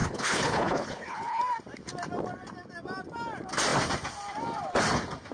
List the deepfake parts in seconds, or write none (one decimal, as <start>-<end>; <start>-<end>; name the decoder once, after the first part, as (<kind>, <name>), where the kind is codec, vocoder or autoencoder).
0.0-1.4 (codec, HILCodec)